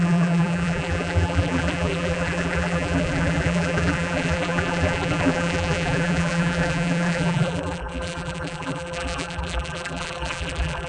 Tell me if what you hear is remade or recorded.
remade